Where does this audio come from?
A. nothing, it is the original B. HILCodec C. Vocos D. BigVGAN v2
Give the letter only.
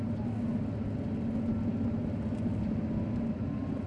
A